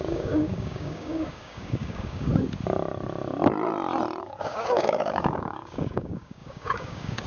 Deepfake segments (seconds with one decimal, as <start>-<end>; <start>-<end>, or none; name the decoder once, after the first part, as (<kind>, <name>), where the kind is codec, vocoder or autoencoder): 0.0-2.3 (codec, DAC); 4.2-7.3